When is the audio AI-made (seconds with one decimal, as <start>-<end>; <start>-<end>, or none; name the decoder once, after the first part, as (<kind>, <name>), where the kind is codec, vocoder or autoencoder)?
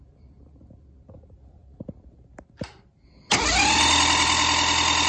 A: none